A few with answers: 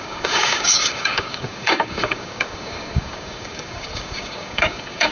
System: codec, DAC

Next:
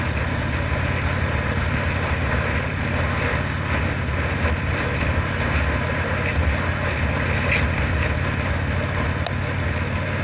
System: none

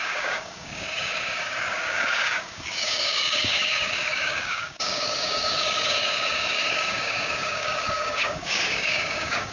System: codec, DAC